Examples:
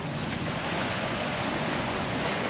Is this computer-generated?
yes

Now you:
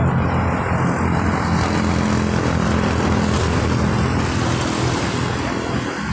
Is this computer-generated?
no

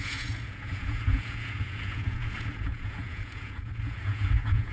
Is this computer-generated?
yes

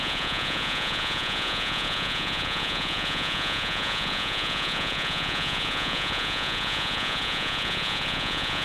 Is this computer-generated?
yes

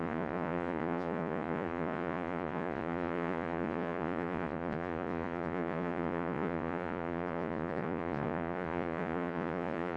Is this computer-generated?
yes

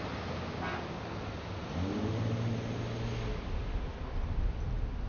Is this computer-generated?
no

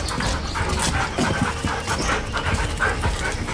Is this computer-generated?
no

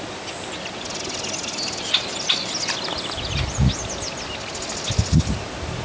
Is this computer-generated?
no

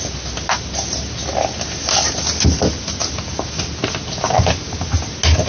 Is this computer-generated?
no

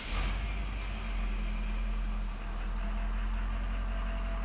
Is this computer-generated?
no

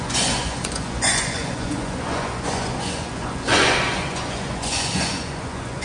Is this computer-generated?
yes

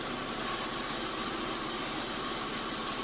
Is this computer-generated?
no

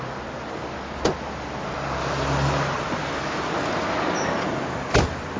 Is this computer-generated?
no